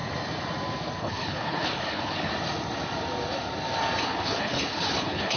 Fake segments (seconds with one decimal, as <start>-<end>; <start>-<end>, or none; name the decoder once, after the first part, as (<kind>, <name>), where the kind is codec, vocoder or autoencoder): 1.0-2.3 (codec, HILCodec); 4.0-5.4